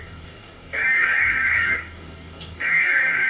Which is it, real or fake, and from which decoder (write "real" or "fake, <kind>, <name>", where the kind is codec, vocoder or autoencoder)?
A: fake, codec, DAC